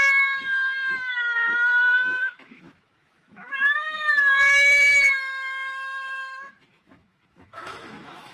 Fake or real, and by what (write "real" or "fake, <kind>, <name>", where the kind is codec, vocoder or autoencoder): fake, autoencoder, DAC-VAE